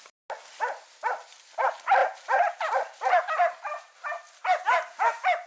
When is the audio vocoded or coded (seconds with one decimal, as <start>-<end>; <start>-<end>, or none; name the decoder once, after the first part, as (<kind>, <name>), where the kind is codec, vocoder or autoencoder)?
2.0-5.5 (vocoder, BigVGAN v2)